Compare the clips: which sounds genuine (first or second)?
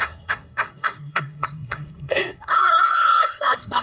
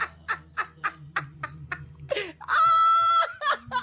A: second